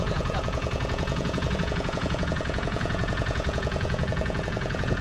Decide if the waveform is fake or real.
fake